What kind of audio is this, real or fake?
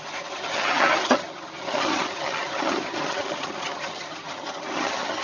fake